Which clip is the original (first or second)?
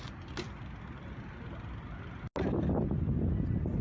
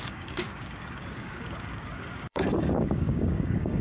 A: first